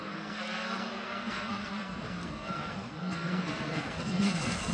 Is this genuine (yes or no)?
no